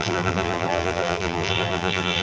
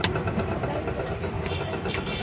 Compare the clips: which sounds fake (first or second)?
first